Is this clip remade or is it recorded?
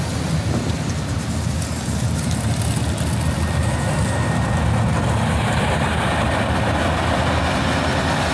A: recorded